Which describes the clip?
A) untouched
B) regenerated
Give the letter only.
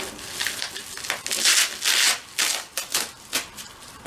A